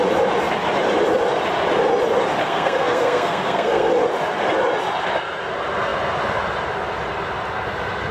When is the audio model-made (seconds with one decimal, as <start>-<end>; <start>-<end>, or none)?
2.4-3.9